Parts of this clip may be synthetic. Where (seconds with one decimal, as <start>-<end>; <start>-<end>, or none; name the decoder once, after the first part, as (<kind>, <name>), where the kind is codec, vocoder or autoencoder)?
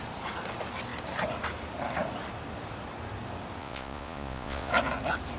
3.6-4.7 (vocoder, Vocos)